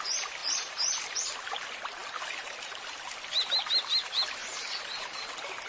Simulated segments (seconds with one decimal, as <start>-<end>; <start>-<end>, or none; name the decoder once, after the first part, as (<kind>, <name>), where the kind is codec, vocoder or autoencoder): none